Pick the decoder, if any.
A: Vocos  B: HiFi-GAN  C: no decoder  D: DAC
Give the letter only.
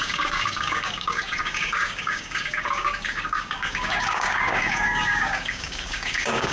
D